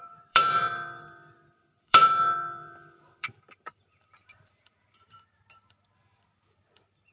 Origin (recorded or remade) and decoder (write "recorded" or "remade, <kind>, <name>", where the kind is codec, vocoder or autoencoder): remade, vocoder, BigVGAN v2